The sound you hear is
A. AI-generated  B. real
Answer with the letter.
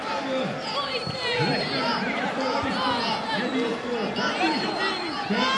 B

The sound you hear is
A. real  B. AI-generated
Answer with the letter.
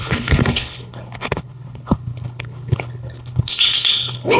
B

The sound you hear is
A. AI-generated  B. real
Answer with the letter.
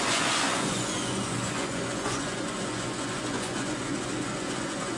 A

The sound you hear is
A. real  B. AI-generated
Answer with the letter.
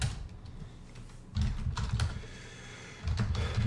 A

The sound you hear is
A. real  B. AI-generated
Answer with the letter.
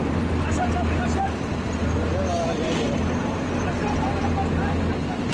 A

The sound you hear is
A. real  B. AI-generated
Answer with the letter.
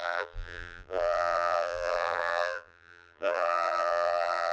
B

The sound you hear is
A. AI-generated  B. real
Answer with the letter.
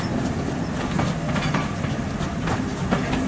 B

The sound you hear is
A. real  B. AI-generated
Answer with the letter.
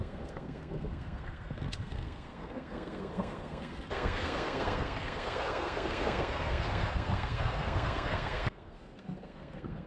B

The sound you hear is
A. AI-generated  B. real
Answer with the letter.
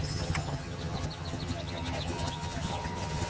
A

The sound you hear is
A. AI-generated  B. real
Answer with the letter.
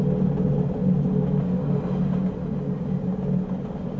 B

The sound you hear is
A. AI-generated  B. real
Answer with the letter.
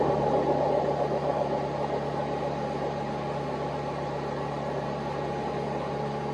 B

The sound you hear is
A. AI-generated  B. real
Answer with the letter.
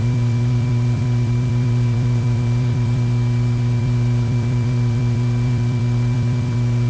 A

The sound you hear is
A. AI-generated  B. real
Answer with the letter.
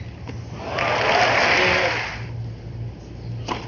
B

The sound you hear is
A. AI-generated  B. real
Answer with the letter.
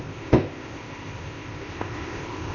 A